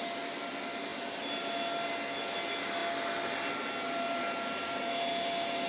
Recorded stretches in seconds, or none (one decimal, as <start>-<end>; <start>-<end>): 0.0-5.7